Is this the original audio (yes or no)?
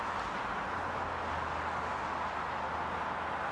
yes